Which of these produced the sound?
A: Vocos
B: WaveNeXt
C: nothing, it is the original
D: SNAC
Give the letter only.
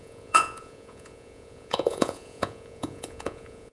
A